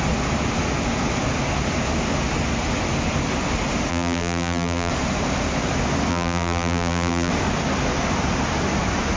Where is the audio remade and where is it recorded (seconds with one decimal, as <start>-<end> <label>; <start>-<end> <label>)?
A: 0.0-3.9 recorded; 3.9-4.9 remade; 4.9-6.1 recorded; 6.1-7.3 remade; 7.3-9.2 recorded